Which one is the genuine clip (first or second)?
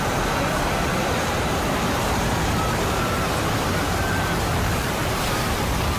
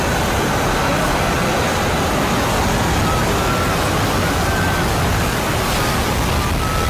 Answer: second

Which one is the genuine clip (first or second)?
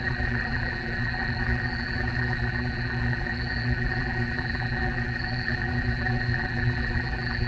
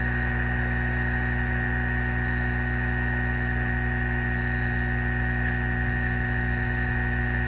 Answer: second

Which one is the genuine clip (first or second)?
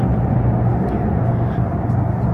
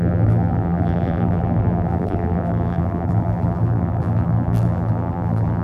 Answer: first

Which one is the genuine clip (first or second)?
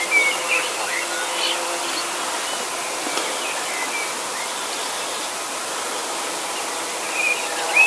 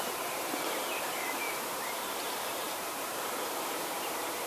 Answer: first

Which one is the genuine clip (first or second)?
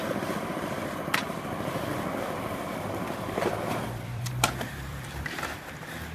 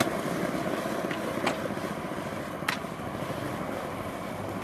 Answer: second